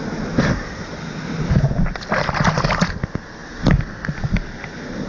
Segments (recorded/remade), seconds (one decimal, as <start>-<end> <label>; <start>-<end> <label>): 0.0-5.1 recorded

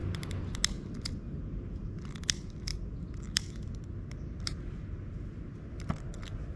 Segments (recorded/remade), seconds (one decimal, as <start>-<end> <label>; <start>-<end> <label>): 0.0-6.6 recorded

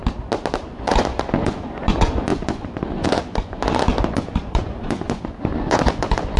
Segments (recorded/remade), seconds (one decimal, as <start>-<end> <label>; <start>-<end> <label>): 0.0-0.6 recorded; 0.6-6.4 remade

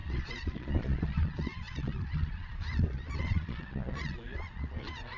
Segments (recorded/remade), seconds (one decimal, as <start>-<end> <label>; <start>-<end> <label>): 0.0-5.2 remade

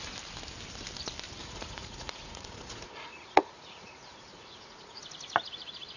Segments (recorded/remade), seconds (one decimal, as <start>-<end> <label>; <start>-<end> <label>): 0.0-1.4 recorded; 1.4-5.0 remade; 5.0-6.0 recorded

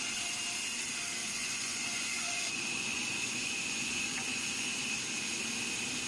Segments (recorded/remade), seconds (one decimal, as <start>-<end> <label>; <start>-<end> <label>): 0.0-1.2 recorded; 1.2-4.7 remade; 4.7-6.1 recorded

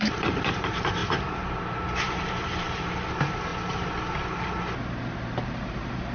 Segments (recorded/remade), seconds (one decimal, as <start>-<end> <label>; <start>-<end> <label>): 0.0-3.5 remade; 3.5-5.3 recorded; 5.3-6.1 remade